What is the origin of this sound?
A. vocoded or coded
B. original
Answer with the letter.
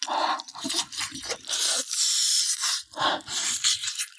B